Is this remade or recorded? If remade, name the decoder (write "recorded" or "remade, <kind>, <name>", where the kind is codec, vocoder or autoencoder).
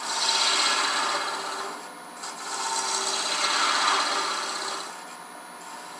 recorded